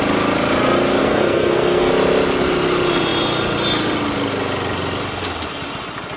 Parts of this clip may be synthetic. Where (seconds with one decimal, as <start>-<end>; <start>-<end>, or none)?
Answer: 1.0-1.9